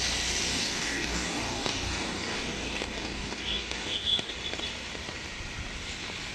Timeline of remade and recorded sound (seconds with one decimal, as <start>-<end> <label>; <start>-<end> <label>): 0.0-0.5 recorded; 0.5-4.3 remade; 4.3-6.3 recorded